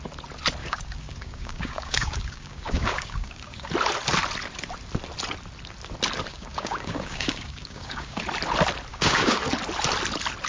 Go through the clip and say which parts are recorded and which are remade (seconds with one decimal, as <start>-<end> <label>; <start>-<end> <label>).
0.0-0.6 recorded; 0.6-3.7 remade; 3.7-6.3 recorded; 6.3-8.2 remade; 8.2-8.9 recorded; 8.9-9.4 remade; 9.4-10.5 recorded

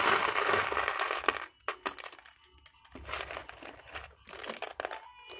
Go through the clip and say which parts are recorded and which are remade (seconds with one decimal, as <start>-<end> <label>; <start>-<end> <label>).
0.0-5.4 recorded

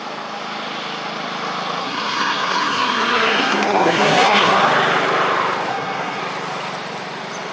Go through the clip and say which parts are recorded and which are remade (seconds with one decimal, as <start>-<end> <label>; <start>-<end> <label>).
0.0-1.8 recorded; 1.8-4.6 remade; 4.6-5.7 recorded; 5.7-6.2 remade; 6.2-7.5 recorded

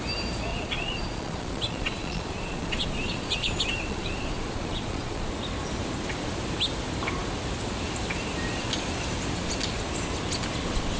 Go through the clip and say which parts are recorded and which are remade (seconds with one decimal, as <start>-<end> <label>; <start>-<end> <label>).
0.0-0.5 recorded; 0.5-5.3 remade; 5.3-11.0 recorded

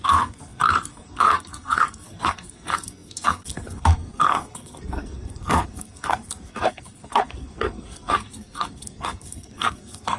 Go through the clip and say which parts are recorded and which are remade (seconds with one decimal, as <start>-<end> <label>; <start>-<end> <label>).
0.0-10.2 remade